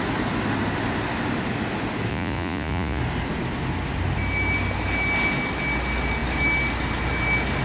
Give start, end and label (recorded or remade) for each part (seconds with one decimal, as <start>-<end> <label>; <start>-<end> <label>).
0.0-2.1 recorded; 2.1-3.0 remade; 3.0-7.6 recorded